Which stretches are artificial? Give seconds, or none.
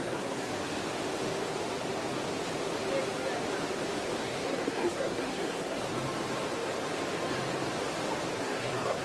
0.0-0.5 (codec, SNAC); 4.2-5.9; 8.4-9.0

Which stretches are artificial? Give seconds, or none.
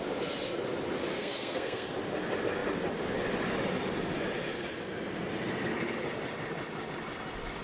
1.1-1.9 (codec, SNAC)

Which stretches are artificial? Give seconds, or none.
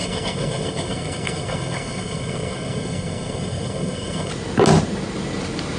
0.0-4.3 (codec, SNAC)